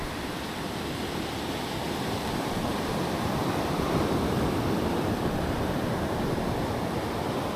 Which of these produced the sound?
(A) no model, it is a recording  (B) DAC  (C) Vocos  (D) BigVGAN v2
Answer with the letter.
D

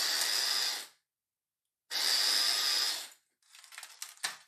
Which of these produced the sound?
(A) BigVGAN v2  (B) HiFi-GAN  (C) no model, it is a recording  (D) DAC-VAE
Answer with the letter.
C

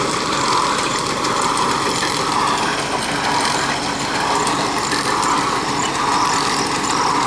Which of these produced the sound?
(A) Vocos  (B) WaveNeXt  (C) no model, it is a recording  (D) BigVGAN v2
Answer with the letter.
D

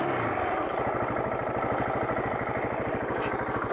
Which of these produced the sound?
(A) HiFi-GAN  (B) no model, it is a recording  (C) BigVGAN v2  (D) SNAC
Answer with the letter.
B